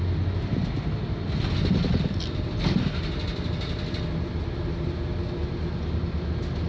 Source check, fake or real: real